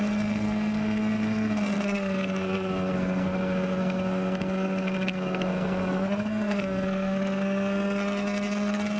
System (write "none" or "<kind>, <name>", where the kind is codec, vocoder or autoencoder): codec, SNAC